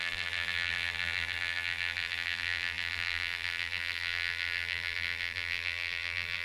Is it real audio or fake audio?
fake